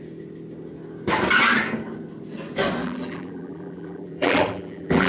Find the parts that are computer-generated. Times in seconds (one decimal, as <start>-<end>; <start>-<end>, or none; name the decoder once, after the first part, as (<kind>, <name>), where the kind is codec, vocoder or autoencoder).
2.8-5.1 (vocoder, BigVGAN v2)